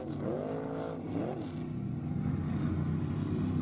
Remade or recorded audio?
recorded